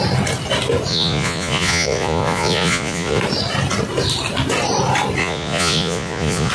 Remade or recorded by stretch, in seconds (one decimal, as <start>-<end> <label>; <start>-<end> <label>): 0.0-0.9 recorded; 0.9-3.2 remade; 3.2-5.2 recorded; 5.2-6.5 remade